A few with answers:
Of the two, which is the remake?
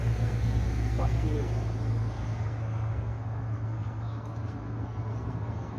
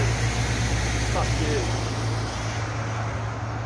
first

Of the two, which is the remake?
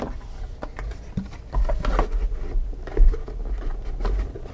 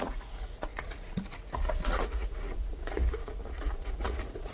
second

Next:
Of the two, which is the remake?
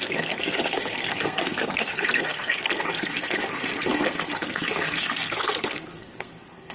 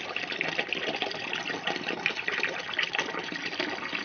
first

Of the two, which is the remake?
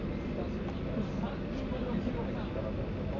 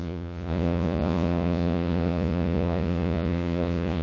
second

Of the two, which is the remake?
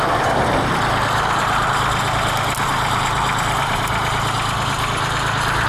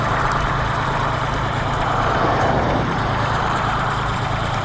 second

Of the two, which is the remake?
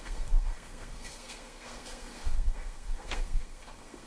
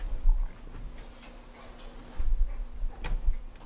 first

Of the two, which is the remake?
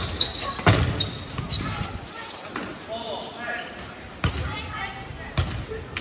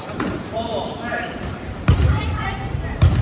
second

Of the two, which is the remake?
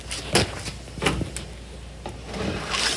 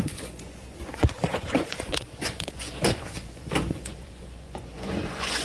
second